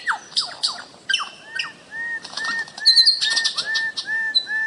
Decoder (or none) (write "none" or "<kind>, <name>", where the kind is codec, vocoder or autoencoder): none